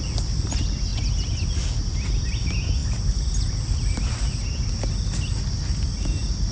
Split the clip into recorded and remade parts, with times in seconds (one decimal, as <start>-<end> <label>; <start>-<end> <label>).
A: 0.0-6.5 recorded